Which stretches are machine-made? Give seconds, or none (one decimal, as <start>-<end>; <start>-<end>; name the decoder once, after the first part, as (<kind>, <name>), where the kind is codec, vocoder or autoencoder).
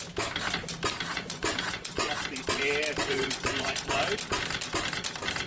1.1-2.1 (vocoder, Vocos); 3.0-4.0